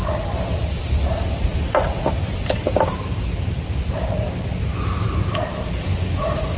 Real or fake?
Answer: real